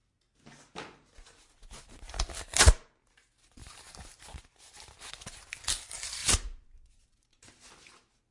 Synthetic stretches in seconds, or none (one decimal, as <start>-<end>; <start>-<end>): 3.6-5.1; 6.2-7.7